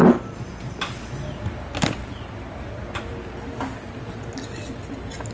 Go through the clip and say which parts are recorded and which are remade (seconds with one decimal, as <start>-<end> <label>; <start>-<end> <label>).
0.0-1.0 remade; 1.0-5.3 recorded